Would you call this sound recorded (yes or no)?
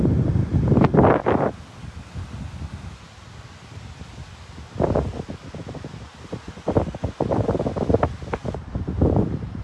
yes